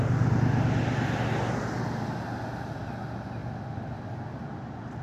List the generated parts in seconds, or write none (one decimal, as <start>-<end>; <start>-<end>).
none